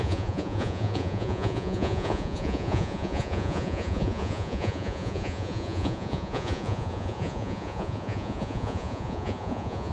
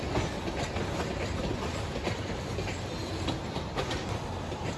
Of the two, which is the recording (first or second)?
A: second